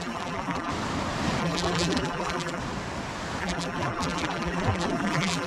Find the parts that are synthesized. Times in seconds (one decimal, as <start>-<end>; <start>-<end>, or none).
0.0-0.7; 1.4-2.6; 3.4-5.5